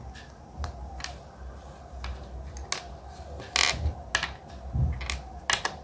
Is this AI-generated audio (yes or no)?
no